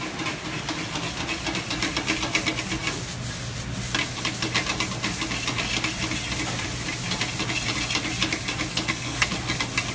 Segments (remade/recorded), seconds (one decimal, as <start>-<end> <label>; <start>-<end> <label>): 0.0-8.7 recorded; 8.7-9.3 remade; 9.3-9.9 recorded

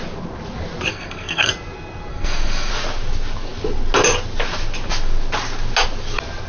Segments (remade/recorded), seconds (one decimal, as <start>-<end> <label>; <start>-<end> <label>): 0.0-0.9 recorded; 0.9-1.5 remade; 1.5-2.1 recorded; 2.1-2.7 remade; 2.7-6.5 recorded

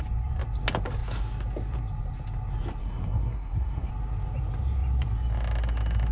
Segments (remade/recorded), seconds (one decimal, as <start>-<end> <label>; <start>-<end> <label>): 0.0-2.8 recorded; 2.8-3.9 remade; 3.9-6.1 recorded

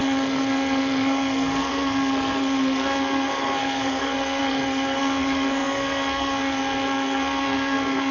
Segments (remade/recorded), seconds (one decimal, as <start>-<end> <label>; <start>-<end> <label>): 0.0-8.1 remade

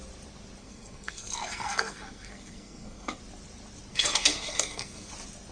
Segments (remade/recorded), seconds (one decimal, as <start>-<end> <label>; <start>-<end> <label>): 0.0-0.6 recorded; 0.6-3.2 remade; 3.2-3.9 recorded; 3.9-5.1 remade; 5.1-5.5 recorded

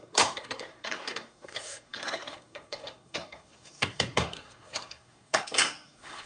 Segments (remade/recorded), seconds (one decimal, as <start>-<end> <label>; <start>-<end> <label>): 0.0-6.3 remade

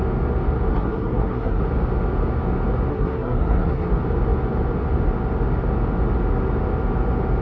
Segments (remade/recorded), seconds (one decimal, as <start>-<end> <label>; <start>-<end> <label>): 0.0-0.7 recorded; 0.7-1.6 remade; 1.6-2.9 recorded; 2.9-3.9 remade; 3.9-7.4 recorded

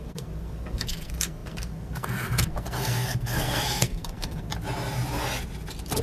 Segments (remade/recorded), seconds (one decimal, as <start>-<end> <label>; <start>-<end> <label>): 0.0-4.5 remade; 4.5-6.0 recorded